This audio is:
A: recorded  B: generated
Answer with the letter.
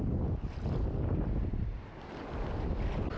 A